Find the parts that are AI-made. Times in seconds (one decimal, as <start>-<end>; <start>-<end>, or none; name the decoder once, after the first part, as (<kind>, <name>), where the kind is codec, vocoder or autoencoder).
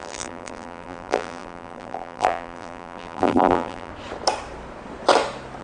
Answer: 0.0-3.9 (vocoder, BigVGAN v2)